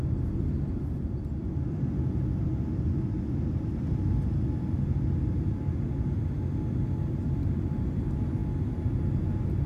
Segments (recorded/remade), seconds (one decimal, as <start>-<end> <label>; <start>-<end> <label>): 0.0-9.7 recorded